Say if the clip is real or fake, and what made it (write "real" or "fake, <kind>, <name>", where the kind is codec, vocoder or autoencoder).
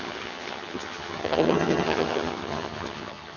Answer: fake, vocoder, HiFi-GAN